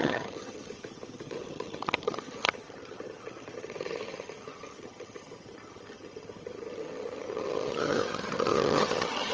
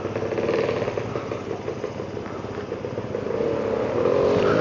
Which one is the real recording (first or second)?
second